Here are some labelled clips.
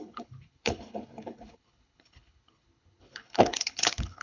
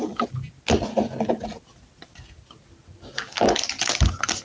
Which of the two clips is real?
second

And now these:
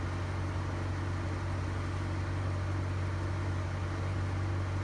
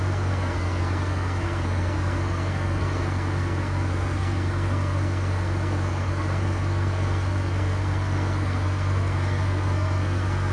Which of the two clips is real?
first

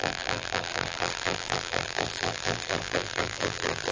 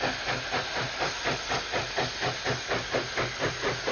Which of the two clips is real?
second